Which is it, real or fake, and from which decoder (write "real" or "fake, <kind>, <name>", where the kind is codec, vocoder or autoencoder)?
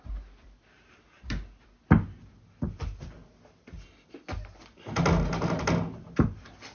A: real